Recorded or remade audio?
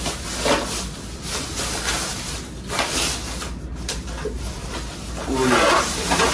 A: recorded